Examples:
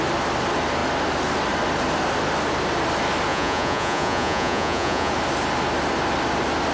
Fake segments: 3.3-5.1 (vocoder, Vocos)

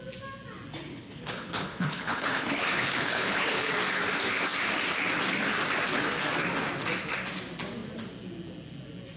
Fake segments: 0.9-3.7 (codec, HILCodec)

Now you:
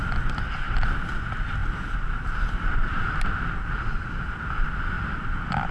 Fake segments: none

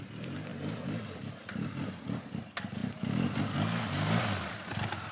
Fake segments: none

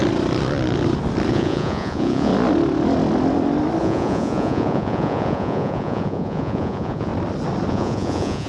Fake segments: 1.3-2.3 (vocoder, Vocos); 3.8-7.1; 7.7-8.5

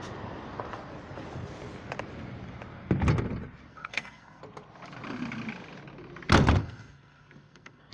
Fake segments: 3.7-4.4 (codec, SNAC); 6.6-7.9

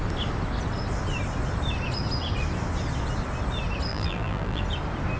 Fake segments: 3.9-4.6 (vocoder, BigVGAN v2)